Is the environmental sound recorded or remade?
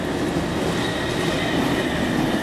recorded